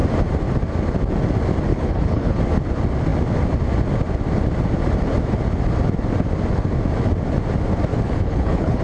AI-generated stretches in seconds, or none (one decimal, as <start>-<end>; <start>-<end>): 1.7-2.4; 7.9-8.8